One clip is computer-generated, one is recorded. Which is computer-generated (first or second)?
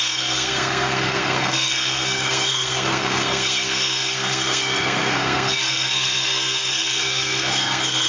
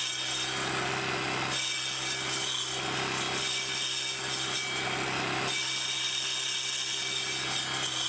first